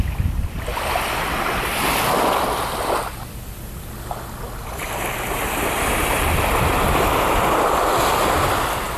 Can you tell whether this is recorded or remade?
recorded